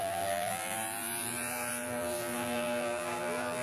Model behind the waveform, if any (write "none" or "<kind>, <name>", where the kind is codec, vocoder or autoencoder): vocoder, BigVGAN v2